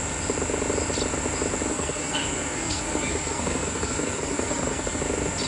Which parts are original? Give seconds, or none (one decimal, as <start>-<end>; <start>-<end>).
0.0-1.7; 5.0-5.5